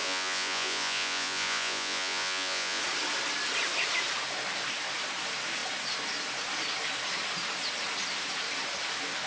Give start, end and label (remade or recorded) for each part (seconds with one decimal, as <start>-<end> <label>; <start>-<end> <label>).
0.0-2.8 remade; 2.8-9.3 recorded